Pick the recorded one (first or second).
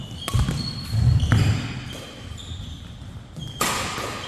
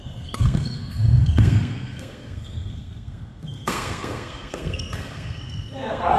first